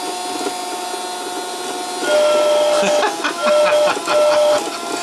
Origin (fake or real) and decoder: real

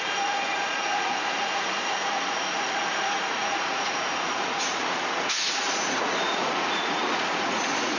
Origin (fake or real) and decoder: fake, vocoder, Vocos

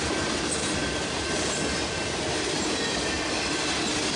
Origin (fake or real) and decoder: real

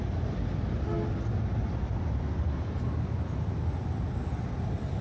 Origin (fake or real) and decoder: real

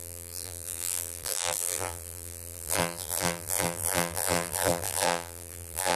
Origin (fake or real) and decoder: fake, vocoder, BigVGAN v2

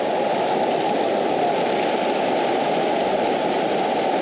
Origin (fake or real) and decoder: real